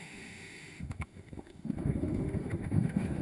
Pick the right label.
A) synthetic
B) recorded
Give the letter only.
A